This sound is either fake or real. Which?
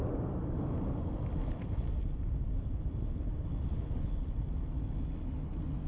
real